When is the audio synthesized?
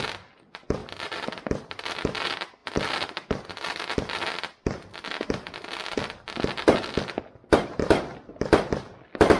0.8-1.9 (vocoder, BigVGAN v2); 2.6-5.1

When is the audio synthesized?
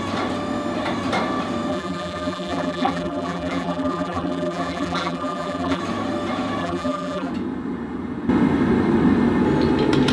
1.7-5.8 (vocoder, BigVGAN v2); 6.6-7.3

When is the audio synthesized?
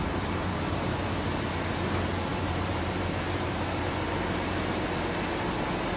2.3-3.8 (vocoder, BigVGAN v2)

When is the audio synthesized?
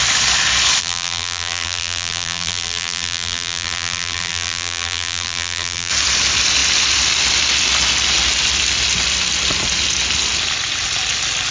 0.8-5.9 (vocoder, BigVGAN v2)